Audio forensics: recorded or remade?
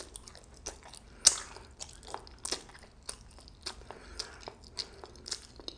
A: recorded